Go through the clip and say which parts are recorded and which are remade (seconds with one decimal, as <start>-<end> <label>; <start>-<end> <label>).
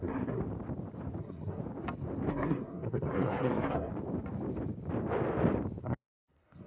0.0-0.4 remade; 0.4-1.2 recorded; 1.2-1.6 remade; 1.6-2.3 recorded; 2.3-3.9 remade; 3.9-5.8 recorded; 5.8-6.7 remade